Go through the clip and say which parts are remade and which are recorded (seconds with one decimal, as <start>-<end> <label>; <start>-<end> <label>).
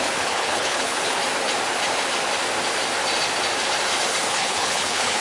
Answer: 0.0-1.2 remade; 1.2-4.3 recorded; 4.3-5.2 remade